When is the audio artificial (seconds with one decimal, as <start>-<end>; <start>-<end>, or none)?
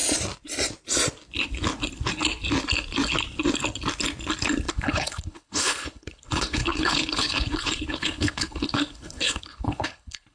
4.7-10.3